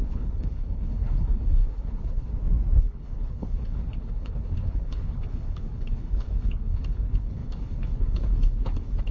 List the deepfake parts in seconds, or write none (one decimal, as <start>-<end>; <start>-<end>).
0.0-2.3; 2.8-9.1